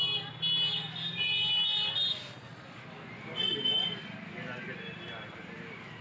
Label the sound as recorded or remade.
recorded